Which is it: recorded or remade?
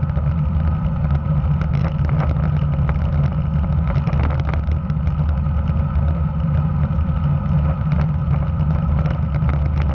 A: recorded